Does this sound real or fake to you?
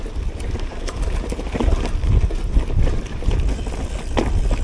real